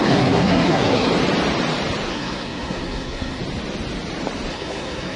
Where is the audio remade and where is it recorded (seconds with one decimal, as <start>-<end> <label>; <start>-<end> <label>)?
0.0-1.1 remade; 1.1-2.1 recorded; 2.1-3.4 remade; 3.4-4.5 recorded; 4.5-5.2 remade